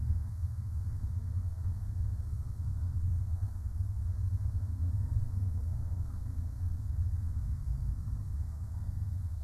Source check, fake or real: fake